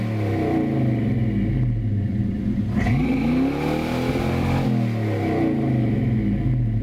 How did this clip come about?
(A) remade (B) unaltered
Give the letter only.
B